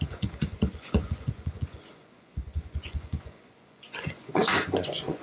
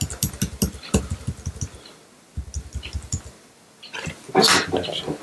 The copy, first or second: first